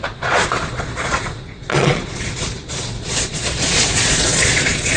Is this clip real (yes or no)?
no